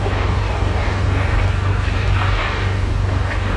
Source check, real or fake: fake